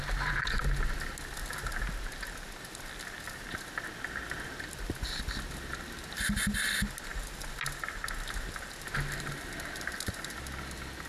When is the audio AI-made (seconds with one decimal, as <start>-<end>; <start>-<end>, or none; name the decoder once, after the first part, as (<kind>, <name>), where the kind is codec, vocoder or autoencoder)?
none